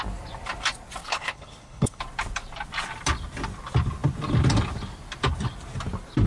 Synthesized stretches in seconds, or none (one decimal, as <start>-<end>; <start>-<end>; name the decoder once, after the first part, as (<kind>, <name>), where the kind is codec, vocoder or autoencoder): 1.0-2.0 (codec, HILCodec)